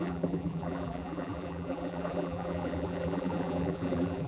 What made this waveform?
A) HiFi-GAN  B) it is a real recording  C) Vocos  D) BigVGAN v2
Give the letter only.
D